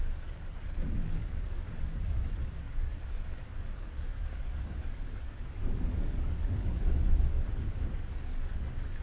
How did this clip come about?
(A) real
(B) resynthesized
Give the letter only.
B